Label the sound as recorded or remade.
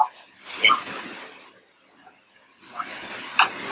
recorded